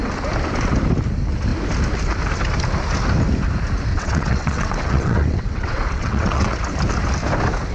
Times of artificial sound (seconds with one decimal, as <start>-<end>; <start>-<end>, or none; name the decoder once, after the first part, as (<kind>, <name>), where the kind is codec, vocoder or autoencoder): 3.9-6.6 (vocoder, WaveNeXt)